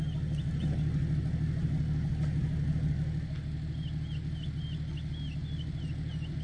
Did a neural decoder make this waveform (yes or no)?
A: no